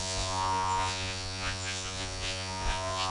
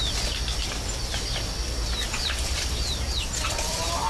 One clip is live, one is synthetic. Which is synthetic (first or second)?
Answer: first